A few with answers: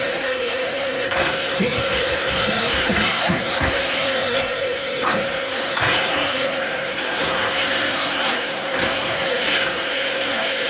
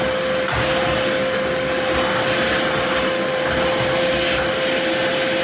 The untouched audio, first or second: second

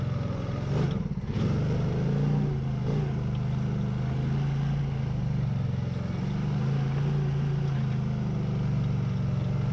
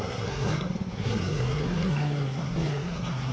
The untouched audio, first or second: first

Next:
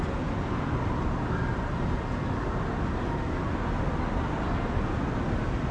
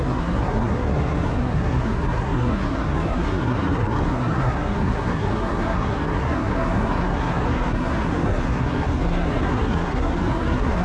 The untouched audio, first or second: first